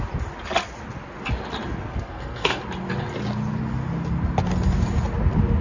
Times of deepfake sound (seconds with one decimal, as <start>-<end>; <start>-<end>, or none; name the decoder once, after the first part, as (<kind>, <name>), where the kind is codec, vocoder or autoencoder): 1.9-2.6 (codec, SNAC)